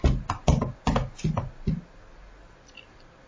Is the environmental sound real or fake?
real